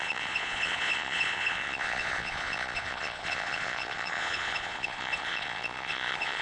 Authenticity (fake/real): fake